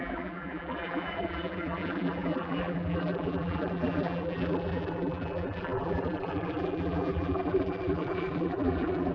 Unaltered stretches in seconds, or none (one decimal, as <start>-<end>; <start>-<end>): none